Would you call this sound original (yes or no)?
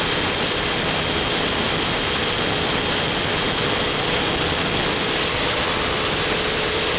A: yes